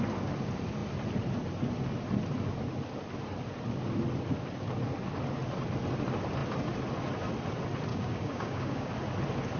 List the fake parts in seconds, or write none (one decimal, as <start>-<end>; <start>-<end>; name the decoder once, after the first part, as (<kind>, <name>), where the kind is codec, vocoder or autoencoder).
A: 7.9-8.9 (codec, DAC)